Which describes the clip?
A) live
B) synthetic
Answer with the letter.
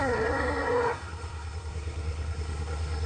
B